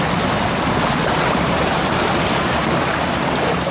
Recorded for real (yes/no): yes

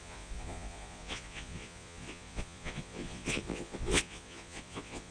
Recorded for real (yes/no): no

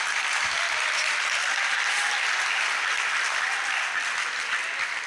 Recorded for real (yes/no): yes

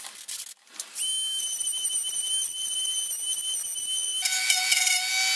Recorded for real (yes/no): yes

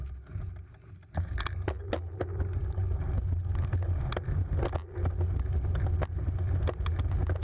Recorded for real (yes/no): yes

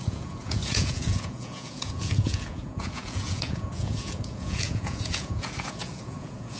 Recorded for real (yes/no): no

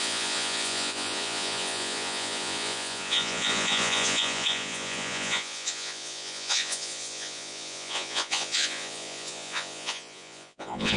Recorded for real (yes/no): no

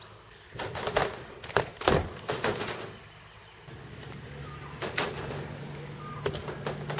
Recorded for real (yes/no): yes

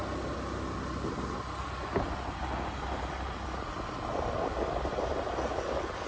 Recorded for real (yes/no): yes